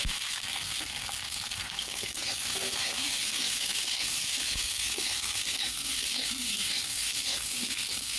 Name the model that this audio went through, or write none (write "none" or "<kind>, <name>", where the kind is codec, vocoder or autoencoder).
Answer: codec, SNAC